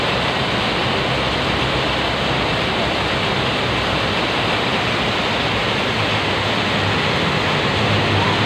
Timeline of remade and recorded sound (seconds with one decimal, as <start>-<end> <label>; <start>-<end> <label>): 0.0-8.5 recorded